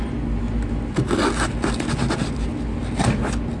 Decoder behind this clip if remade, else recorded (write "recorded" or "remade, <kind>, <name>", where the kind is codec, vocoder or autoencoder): recorded